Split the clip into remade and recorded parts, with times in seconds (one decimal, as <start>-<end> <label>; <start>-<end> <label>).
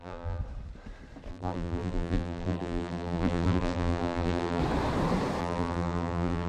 0.0-0.4 remade; 0.4-1.3 recorded; 1.3-4.6 remade; 4.6-5.4 recorded; 5.4-6.5 remade